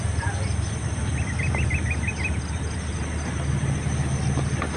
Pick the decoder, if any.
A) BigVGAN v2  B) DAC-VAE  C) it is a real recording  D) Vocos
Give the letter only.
C